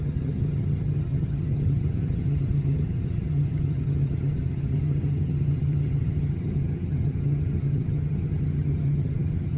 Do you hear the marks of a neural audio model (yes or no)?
yes